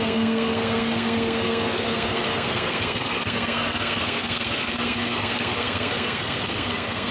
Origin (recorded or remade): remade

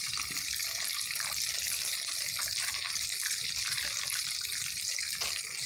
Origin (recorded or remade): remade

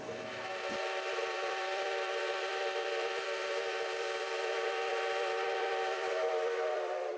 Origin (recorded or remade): remade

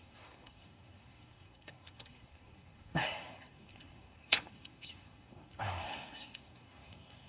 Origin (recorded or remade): remade